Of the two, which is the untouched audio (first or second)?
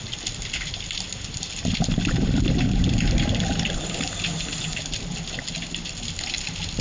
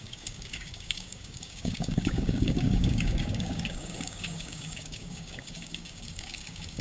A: first